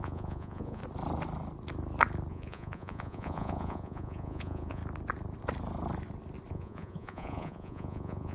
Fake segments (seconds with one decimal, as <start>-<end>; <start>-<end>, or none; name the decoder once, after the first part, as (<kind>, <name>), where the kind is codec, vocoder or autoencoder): 0.0-0.8 (vocoder, Vocos); 2.3-4.8; 6.5-8.3